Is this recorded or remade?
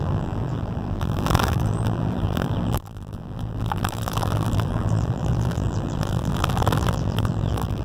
remade